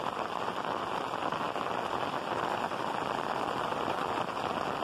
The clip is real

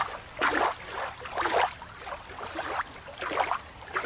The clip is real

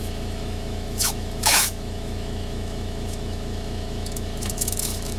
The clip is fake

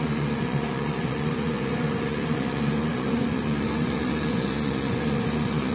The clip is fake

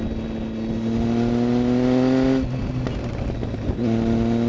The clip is real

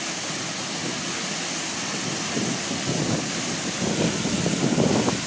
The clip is real